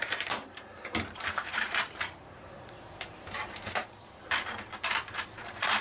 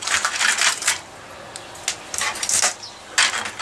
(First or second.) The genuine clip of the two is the second